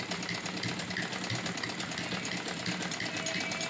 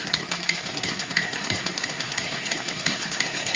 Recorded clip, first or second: first